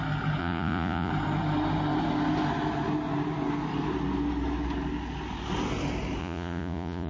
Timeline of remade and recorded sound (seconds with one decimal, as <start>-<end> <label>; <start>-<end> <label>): 0.0-0.4 recorded; 0.4-1.1 remade; 1.1-6.2 recorded; 6.2-7.1 remade

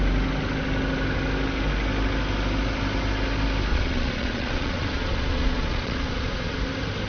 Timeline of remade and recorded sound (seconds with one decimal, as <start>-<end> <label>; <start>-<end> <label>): 0.0-3.7 recorded; 3.7-6.6 remade; 6.6-7.1 recorded